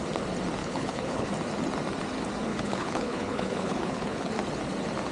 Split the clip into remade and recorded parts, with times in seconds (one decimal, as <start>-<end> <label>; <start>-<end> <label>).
0.0-0.6 recorded; 0.6-1.3 remade; 1.3-2.5 recorded; 2.5-4.3 remade; 4.3-5.1 recorded